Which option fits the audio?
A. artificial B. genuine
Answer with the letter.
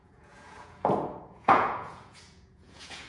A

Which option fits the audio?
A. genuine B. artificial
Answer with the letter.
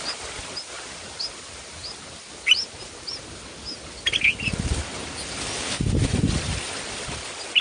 A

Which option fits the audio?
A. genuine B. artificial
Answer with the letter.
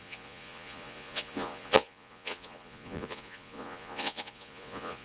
B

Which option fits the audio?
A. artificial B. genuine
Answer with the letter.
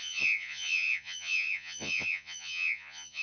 A